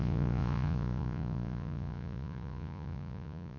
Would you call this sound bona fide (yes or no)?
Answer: no